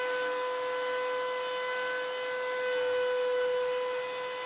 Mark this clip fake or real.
real